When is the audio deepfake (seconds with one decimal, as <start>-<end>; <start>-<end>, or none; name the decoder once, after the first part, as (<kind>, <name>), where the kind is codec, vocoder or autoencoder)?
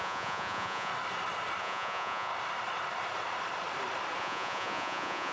0.0-0.9 (vocoder, Vocos); 1.6-2.3; 4.2-5.3